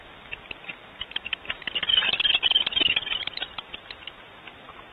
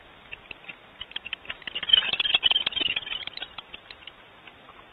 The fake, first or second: second